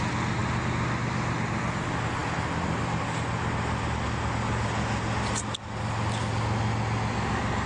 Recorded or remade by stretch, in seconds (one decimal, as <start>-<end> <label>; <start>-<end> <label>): 0.0-7.7 recorded